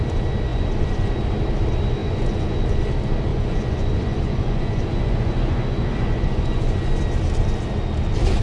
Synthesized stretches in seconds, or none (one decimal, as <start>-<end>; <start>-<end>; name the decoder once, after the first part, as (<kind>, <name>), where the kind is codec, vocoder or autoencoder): 0.5-1.1 (vocoder, Vocos); 2.0-2.6; 3.3-7.0